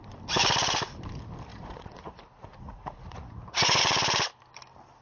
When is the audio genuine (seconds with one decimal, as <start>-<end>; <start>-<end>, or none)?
0.0-1.5; 3.8-5.0